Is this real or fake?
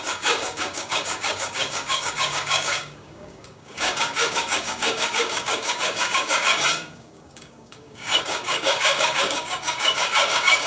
fake